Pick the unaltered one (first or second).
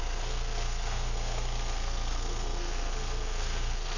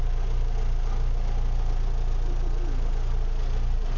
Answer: second